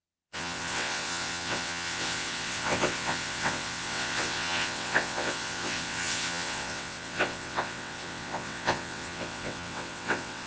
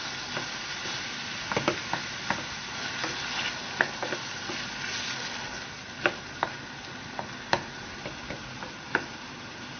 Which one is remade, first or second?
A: first